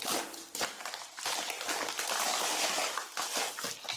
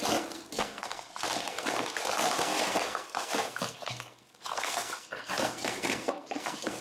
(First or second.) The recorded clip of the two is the first